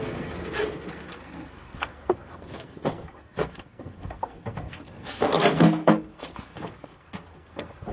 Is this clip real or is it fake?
fake